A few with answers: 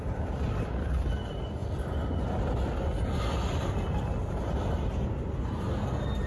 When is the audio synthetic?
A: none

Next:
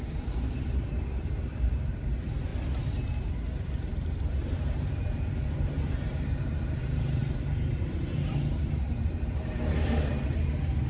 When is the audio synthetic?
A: 0.0-2.5 (vocoder, BigVGAN v2); 3.7-10.9

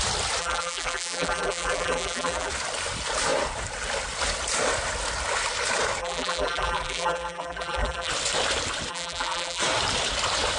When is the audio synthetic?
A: 0.4-2.5 (vocoder, BigVGAN v2); 6.0-8.1; 8.9-9.6

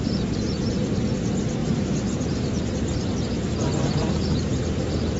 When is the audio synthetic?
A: 1.6-3.1 (vocoder, BigVGAN v2)